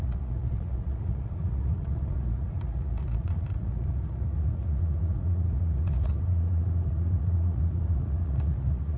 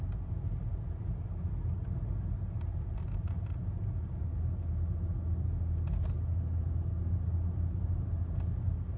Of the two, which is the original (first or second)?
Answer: second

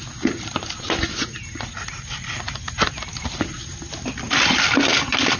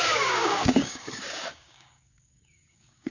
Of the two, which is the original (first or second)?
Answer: first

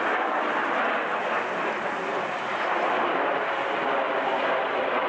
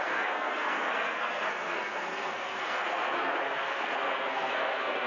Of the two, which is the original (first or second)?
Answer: first